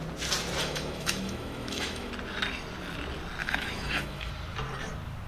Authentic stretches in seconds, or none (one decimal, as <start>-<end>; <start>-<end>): 0.0-0.6; 2.1-3.4; 4.3-5.3